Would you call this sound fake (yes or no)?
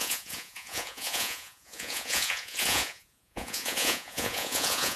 yes